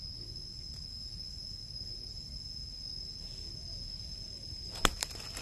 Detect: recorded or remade recorded